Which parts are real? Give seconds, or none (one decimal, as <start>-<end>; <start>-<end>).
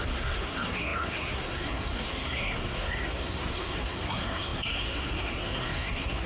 none